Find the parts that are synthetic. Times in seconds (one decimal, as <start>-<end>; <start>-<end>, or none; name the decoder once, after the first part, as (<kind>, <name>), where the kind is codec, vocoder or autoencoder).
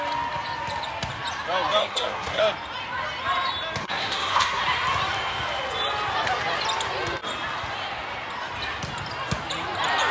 1.8-2.4 (codec, SNAC); 3.8-4.6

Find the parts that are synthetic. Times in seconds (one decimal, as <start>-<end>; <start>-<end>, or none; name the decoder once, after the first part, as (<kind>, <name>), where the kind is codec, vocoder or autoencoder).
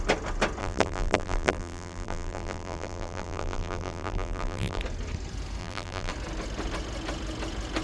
0.6-4.8 (vocoder, BigVGAN v2); 5.6-6.1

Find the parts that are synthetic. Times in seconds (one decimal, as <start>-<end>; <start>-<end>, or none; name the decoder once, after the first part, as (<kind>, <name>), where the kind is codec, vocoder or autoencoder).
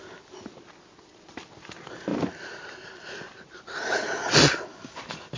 none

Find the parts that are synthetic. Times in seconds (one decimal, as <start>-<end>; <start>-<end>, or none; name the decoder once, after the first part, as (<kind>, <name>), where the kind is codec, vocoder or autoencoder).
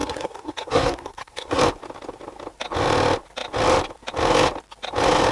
0.0-1.6 (codec, SNAC)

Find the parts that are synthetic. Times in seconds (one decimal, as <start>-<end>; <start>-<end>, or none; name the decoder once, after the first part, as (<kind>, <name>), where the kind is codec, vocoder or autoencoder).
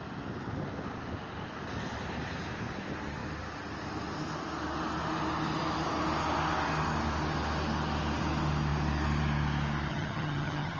9.9-10.8 (vocoder, HiFi-GAN)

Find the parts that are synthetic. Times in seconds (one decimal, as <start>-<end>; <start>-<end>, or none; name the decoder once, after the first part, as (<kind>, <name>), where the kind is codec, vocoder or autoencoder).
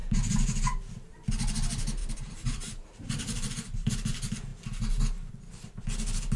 2.0-3.9 (vocoder, BigVGAN v2)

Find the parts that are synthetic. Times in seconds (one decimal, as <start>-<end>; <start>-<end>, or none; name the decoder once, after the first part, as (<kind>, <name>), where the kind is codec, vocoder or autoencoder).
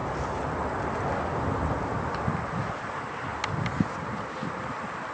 none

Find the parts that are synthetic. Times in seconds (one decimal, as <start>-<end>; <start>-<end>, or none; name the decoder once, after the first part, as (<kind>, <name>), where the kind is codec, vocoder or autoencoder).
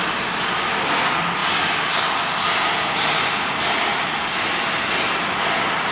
none